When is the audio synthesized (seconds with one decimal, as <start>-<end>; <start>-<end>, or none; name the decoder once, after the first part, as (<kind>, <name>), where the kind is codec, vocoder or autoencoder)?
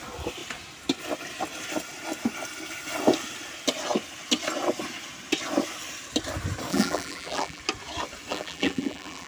6.7-7.6 (vocoder, BigVGAN v2); 8.3-9.3